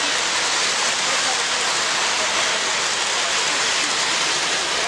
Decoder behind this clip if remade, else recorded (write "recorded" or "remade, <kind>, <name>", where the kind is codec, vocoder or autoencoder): recorded